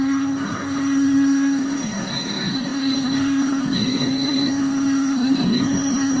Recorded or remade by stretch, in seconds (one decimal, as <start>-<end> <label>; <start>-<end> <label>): 0.0-6.2 remade